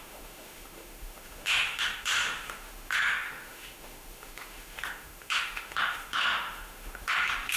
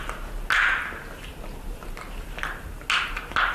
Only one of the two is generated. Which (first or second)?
first